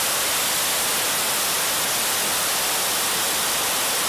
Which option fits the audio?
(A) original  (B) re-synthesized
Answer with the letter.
A